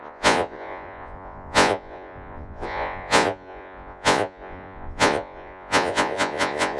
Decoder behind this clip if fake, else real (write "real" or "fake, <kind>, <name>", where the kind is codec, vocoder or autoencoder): fake, vocoder, Vocos